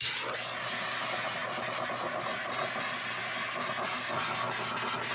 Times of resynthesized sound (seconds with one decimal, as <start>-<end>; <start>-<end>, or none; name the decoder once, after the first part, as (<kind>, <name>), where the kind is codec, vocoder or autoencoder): none